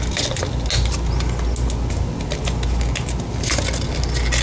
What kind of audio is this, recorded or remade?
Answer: recorded